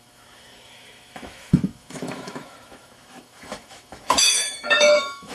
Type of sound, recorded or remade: remade